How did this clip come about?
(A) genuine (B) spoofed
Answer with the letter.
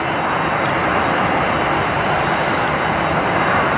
A